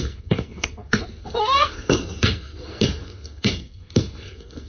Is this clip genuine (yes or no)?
no